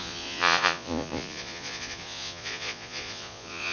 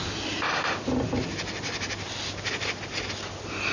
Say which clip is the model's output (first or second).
first